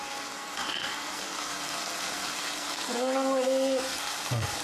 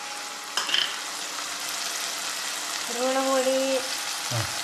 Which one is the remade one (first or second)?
first